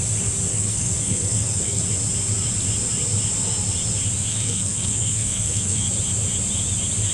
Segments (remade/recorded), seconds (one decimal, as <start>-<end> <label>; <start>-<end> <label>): 0.0-0.5 recorded; 0.5-1.8 remade; 1.8-4.3 recorded; 4.3-5.9 remade; 5.9-7.1 recorded